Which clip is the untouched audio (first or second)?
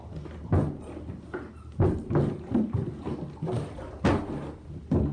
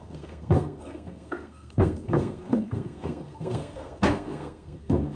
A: first